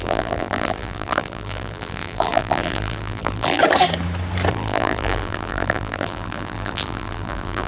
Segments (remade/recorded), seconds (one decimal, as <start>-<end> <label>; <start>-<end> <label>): 0.0-3.6 remade; 3.6-4.5 recorded; 4.5-7.7 remade